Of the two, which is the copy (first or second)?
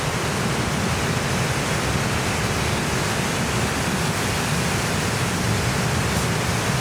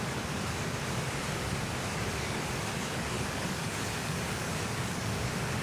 second